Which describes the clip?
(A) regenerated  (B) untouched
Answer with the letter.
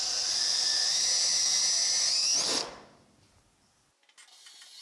B